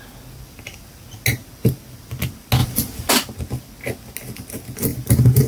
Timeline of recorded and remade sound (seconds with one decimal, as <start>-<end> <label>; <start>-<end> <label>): 0.0-2.6 recorded; 2.6-3.1 remade; 3.1-4.9 recorded; 4.9-5.5 remade